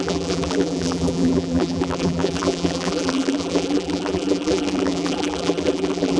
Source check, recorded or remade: remade